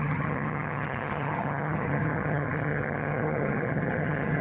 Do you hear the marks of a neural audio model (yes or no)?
yes